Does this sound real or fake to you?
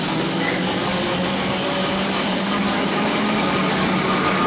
fake